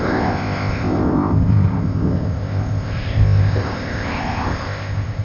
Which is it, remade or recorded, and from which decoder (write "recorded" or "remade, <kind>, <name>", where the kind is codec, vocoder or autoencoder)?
remade, codec, ZipCodec